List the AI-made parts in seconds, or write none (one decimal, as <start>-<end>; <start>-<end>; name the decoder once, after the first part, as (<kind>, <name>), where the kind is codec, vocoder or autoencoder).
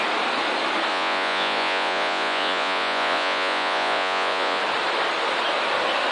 0.9-4.6 (vocoder, Vocos)